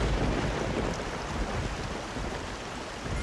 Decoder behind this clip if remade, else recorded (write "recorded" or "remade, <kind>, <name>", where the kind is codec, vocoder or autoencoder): recorded